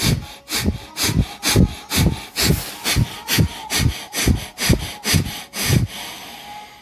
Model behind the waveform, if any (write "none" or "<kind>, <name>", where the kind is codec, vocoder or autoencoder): none